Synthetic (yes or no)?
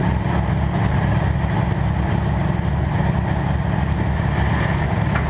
no